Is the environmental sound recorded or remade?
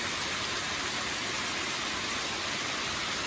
recorded